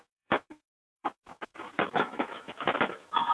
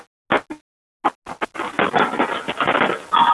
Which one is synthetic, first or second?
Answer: first